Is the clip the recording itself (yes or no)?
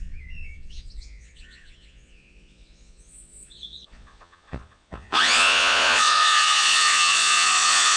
no